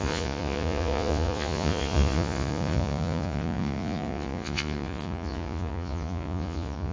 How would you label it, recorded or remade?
remade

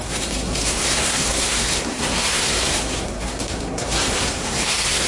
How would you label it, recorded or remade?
remade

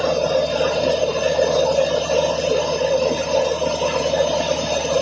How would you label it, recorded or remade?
recorded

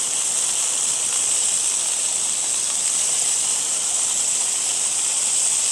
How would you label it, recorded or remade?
recorded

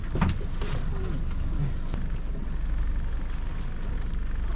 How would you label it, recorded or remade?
recorded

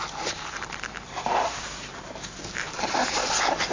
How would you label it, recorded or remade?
remade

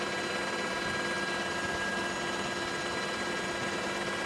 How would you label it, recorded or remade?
recorded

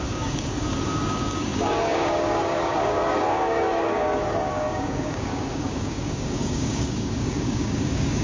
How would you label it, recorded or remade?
remade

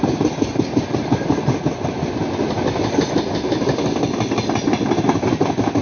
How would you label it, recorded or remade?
recorded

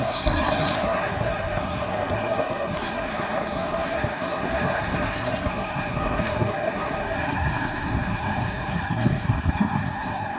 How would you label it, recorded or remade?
remade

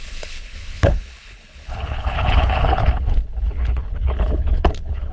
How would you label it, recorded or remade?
remade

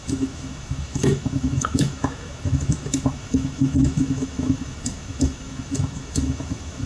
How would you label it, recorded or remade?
remade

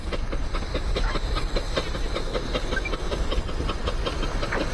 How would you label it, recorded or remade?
recorded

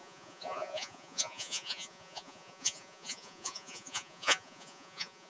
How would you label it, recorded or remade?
remade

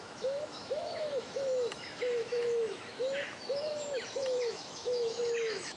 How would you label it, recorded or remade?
remade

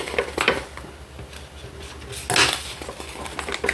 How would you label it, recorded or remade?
recorded